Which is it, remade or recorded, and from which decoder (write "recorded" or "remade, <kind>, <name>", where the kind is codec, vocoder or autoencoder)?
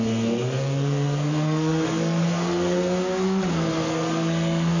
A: remade, codec, SNAC